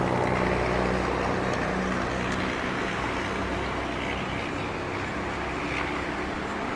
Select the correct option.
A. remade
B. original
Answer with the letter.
B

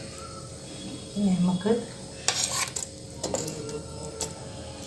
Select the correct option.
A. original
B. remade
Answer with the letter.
A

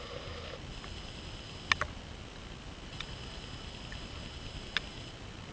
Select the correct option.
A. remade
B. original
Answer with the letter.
B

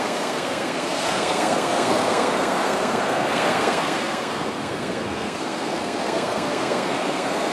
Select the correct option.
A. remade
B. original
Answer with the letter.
A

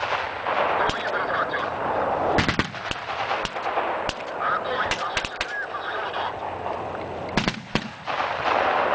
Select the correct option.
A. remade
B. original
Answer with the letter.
B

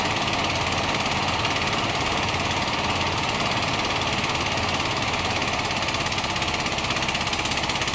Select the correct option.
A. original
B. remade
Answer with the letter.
A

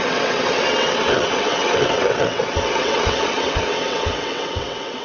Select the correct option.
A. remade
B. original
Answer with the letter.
A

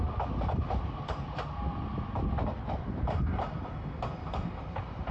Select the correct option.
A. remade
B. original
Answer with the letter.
B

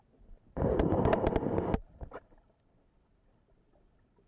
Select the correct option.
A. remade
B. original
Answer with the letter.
B